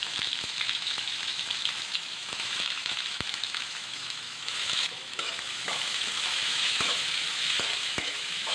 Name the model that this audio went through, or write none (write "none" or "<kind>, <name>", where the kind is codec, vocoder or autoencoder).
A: autoencoder, DAC-VAE